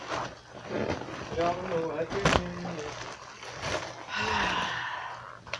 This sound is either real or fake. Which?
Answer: real